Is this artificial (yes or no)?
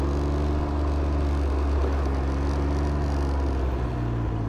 no